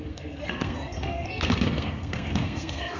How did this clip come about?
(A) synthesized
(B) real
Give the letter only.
A